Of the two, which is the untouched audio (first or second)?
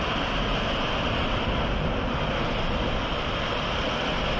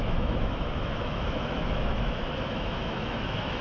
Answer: first